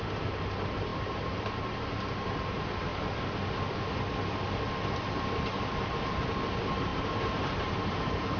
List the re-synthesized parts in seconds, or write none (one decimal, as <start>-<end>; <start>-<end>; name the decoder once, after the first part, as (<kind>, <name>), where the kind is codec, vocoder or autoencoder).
0.0-2.9 (vocoder, BigVGAN v2); 5.0-8.4